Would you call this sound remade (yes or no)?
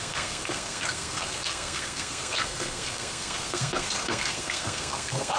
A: yes